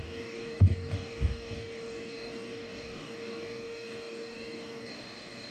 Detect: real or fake fake